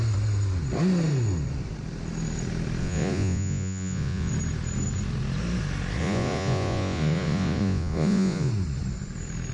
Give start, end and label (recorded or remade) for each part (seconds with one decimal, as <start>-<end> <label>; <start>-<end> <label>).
0.0-2.8 recorded; 2.8-4.3 remade; 4.3-6.0 recorded; 6.0-8.5 remade; 8.5-9.5 recorded